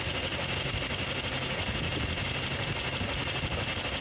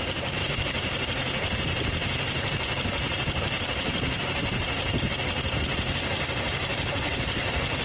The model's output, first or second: second